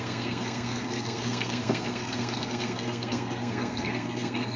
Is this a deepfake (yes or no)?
yes